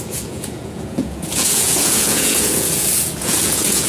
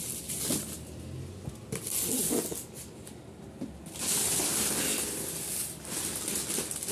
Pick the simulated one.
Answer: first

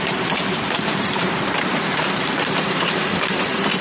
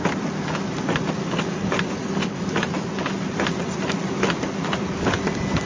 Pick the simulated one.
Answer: first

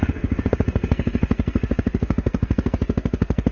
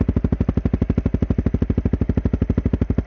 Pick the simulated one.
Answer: first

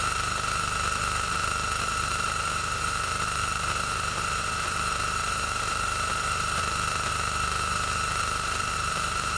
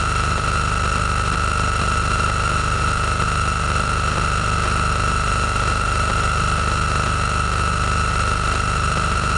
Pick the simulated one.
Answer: first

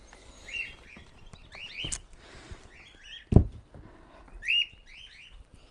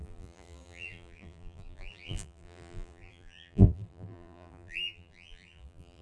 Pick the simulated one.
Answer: second